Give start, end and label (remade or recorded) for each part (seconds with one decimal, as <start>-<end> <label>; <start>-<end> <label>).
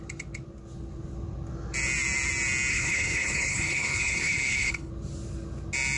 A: 0.0-2.7 recorded; 2.7-4.9 remade; 4.9-6.0 recorded